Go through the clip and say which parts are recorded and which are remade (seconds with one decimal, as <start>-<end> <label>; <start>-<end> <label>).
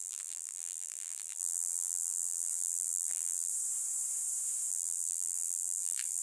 0.0-3.5 remade; 3.5-4.7 recorded; 4.7-6.2 remade